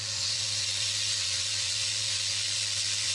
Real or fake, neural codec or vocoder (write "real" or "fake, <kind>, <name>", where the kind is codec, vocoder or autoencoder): fake, vocoder, Vocos